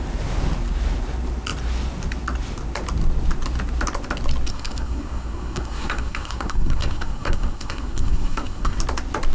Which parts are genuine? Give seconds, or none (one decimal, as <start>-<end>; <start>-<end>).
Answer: 0.0-4.5; 8.8-9.3